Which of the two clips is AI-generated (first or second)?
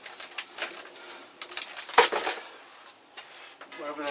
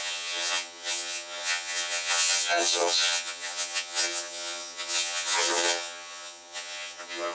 second